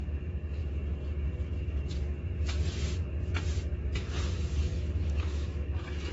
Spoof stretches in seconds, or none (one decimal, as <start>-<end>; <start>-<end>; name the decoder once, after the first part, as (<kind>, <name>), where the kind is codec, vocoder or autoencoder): 4.7-6.1 (autoencoder, DAC-VAE)